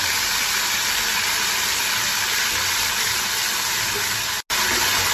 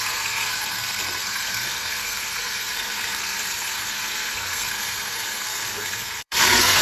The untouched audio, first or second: first